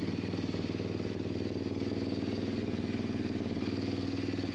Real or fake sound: real